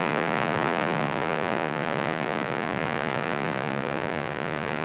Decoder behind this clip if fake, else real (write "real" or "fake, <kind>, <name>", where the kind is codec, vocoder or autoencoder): fake, vocoder, Vocos